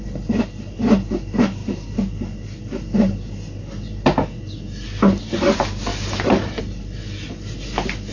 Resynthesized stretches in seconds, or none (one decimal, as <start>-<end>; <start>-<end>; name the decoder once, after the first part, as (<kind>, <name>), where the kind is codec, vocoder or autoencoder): none